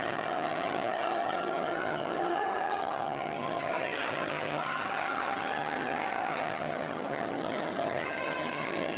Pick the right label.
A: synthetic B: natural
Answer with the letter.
A